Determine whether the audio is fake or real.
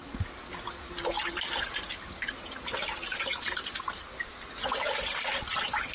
fake